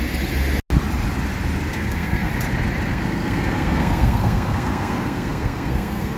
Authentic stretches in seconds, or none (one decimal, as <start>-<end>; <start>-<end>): 0.0-1.7; 2.3-2.9

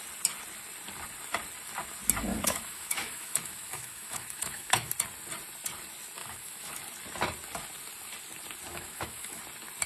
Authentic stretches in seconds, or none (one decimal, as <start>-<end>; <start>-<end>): 0.0-2.3; 4.9-6.2; 6.8-8.7; 9.4-9.9

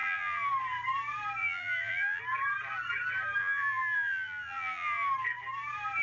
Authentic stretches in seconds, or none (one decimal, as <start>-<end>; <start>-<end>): 0.5-1.4; 2.2-3.4; 5.1-6.0

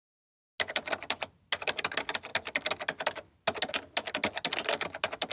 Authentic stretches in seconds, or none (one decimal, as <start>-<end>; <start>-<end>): 0.0-5.3

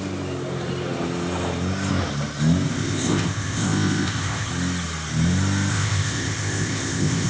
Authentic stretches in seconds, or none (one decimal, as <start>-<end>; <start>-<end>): 0.0-2.7; 4.5-5.7

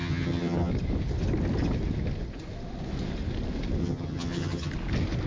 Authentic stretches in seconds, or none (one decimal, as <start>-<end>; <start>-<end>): 0.7-3.8; 4.7-5.3

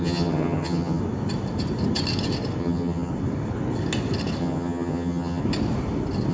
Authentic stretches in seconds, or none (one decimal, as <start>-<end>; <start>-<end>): 1.0-2.6; 3.1-4.4; 5.4-6.3

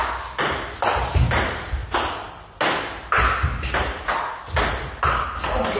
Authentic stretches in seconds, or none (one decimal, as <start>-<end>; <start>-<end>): 0.0-5.8